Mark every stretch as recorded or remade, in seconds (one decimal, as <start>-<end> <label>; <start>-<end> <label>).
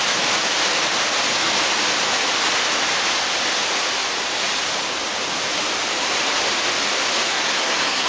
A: 0.0-7.3 recorded; 7.3-8.1 remade